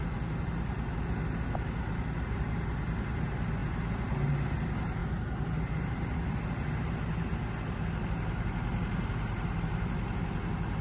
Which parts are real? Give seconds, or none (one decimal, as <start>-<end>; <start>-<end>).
0.0-10.8